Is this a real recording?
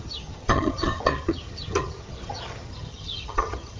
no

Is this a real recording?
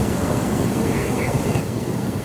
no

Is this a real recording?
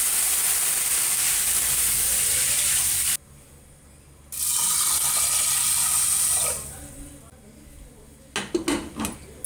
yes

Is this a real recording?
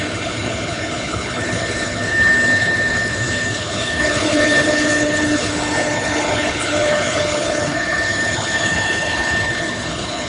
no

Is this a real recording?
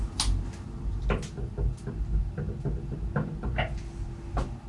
yes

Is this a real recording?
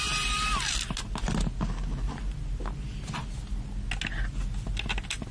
yes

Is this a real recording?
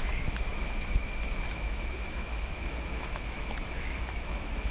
no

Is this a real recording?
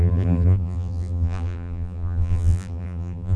no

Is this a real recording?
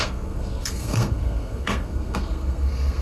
no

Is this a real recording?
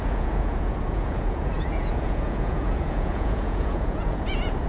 no